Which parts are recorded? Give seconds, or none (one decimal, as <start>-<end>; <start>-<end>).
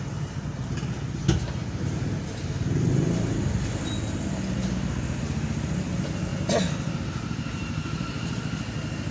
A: 0.0-9.1